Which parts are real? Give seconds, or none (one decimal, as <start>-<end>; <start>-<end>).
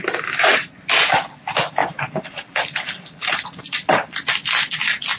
0.0-5.2